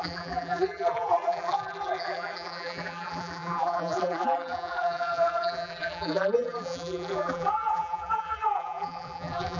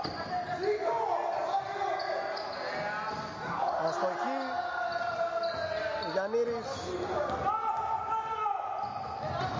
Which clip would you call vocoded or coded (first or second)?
first